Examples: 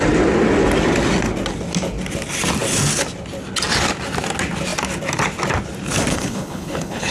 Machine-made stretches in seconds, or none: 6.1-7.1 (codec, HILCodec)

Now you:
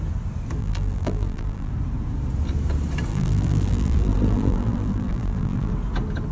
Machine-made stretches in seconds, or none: 0.6-1.7 (vocoder, BigVGAN v2); 3.1-5.7

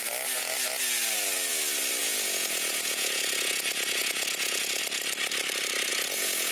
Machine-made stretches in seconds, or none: 2.0-4.8 (vocoder, Vocos); 5.9-6.5